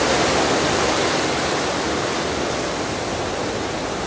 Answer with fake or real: real